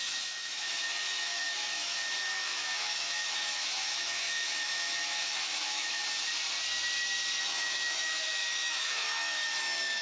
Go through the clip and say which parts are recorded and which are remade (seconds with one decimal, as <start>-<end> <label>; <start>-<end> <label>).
0.0-6.0 remade; 6.0-7.4 recorded; 7.4-10.0 remade